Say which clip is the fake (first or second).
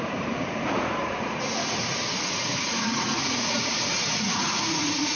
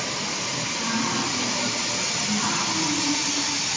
first